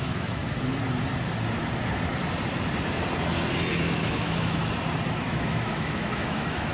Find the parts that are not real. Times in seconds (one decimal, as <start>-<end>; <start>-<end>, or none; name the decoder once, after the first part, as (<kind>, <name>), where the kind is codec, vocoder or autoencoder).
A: 0.0-0.4 (autoencoder, DAC-VAE); 3.8-4.6; 5.2-6.7